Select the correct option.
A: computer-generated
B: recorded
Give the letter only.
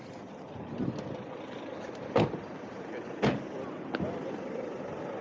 B